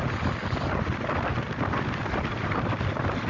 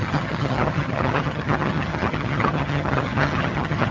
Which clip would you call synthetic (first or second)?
second